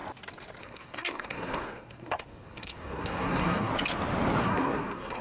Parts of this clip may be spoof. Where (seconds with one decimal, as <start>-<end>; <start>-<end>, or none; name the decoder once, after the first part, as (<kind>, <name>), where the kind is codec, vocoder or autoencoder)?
0.6-3.7 (codec, SNAC); 4.4-5.2